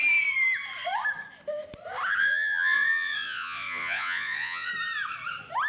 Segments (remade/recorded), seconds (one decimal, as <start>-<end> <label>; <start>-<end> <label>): 0.0-2.2 recorded; 2.2-4.7 remade; 4.7-5.7 recorded